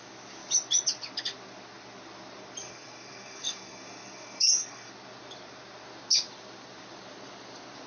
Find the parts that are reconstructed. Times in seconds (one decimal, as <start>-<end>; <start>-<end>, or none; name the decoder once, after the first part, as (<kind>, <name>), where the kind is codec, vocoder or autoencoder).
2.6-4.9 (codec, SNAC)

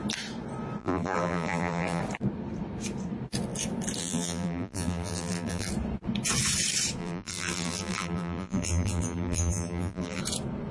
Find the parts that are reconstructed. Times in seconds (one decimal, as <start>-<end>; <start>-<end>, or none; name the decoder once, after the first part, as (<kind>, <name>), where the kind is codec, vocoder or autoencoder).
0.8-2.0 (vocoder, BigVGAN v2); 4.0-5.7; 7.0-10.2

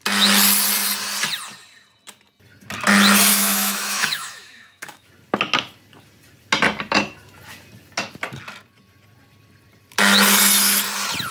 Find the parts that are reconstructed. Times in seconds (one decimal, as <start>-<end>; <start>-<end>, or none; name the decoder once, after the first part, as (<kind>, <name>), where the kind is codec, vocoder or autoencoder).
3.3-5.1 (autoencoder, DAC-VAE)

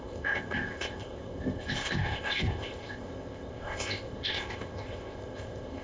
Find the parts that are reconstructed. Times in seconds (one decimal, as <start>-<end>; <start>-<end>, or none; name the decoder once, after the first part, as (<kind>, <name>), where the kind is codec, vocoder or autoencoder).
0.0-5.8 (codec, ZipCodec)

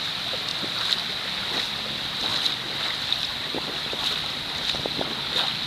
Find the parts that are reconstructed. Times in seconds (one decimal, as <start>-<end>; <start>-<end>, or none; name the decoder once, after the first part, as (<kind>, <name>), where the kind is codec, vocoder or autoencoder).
0.5-1.1 (vocoder, BigVGAN v2); 2.3-2.8; 3.3-4.6

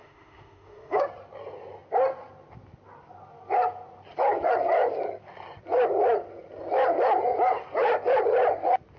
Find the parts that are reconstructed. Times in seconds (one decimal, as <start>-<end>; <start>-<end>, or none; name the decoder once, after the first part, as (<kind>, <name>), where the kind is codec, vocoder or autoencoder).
0.0-1.0 (autoencoder, DAC-VAE)

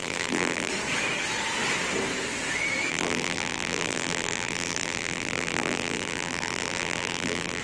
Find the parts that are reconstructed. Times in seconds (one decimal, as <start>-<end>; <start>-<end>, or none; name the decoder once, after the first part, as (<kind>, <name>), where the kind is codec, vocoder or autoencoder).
0.0-0.7 (vocoder, BigVGAN v2); 2.9-7.6